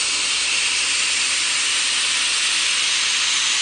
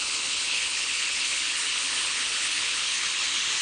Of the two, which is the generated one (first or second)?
second